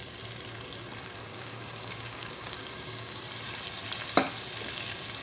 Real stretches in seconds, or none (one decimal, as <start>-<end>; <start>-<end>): 0.0-1.3; 3.2-5.2